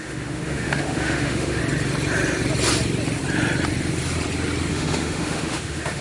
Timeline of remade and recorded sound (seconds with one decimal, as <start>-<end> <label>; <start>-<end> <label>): 0.0-1.6 remade; 1.6-4.7 recorded; 4.7-6.0 remade